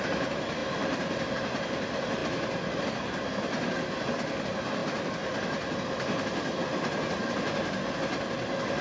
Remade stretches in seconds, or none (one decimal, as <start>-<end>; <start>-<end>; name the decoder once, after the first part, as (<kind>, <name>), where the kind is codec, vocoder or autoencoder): 0.6-1.3 (vocoder, BigVGAN v2)

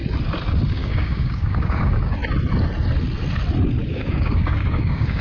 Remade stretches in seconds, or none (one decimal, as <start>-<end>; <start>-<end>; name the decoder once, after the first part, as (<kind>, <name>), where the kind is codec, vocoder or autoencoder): 0.7-2.2 (codec, DAC); 3.9-5.2

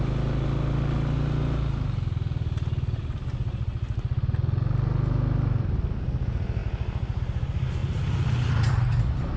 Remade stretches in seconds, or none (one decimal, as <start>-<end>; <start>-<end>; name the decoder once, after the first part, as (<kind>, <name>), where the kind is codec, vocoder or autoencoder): none

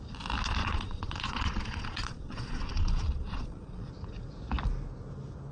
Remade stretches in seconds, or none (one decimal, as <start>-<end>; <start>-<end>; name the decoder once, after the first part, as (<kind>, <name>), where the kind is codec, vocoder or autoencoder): 0.6-3.9 (vocoder, Vocos)

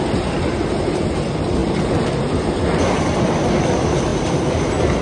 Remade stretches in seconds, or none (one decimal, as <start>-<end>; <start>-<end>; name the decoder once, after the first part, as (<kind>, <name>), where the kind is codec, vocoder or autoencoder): none

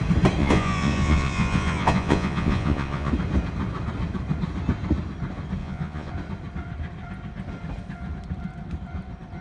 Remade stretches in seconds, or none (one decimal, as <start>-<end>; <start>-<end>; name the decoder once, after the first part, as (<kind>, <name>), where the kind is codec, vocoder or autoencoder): 0.4-3.1 (vocoder, Vocos); 5.6-6.1